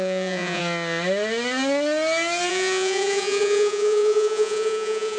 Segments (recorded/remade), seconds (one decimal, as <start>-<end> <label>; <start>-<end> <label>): 0.0-0.6 remade; 0.6-2.5 recorded; 2.5-5.2 remade